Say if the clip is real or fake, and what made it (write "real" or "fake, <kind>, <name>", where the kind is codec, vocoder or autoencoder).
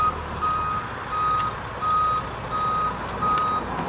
real